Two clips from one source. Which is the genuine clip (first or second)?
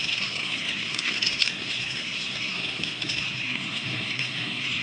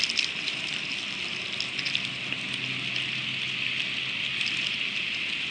second